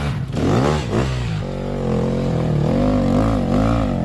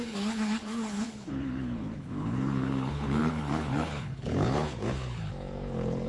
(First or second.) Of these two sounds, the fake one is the second